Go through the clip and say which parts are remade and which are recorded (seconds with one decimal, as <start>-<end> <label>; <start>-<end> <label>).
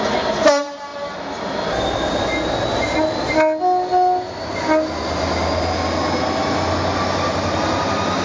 0.0-8.2 recorded